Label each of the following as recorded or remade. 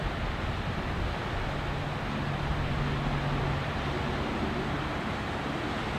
recorded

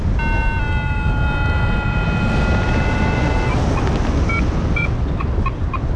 recorded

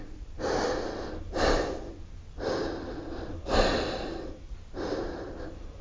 recorded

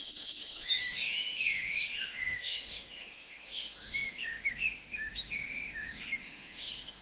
remade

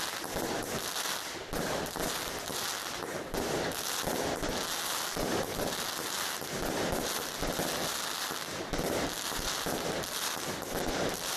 recorded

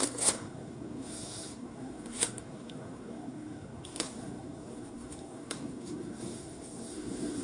remade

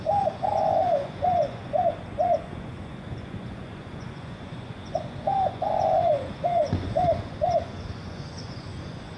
remade